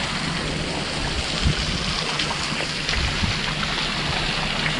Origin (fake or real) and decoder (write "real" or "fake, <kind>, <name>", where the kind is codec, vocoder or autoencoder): real